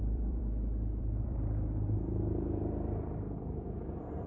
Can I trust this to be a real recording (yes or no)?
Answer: no